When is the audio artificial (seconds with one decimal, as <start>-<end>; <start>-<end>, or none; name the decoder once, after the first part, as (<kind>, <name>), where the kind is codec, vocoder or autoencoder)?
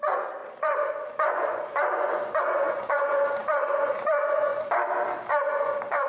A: 0.0-4.5 (vocoder, Vocos); 5.3-6.1